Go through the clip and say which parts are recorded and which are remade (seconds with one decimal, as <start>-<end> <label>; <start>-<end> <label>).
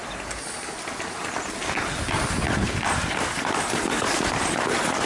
0.0-2.3 recorded; 2.3-5.1 remade